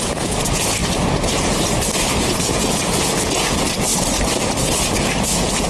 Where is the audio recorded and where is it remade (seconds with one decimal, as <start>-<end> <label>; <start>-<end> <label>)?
0.0-0.8 remade; 0.8-2.2 recorded; 2.2-3.9 remade; 3.9-5.0 recorded; 5.0-5.7 remade